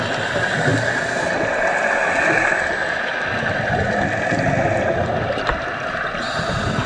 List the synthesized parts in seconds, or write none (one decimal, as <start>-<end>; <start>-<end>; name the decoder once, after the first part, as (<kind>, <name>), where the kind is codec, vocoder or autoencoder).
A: none